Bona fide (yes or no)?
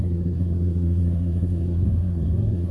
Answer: no